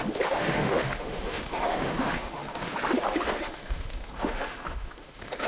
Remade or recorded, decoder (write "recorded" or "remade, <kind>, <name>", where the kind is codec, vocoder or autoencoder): remade, autoencoder, DAC-VAE